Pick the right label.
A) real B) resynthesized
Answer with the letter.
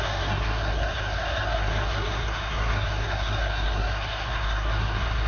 B